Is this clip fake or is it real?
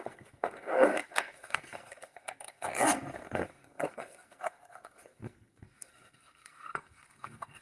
fake